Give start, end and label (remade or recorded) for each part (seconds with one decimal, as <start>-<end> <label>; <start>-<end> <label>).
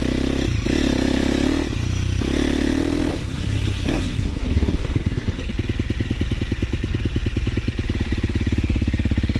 0.0-3.1 recorded; 3.1-5.5 remade; 5.5-9.4 recorded